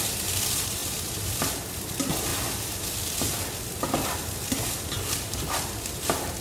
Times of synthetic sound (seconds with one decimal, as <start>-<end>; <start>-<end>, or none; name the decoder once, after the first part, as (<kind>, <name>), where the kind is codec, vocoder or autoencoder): none